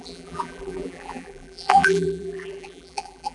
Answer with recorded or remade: remade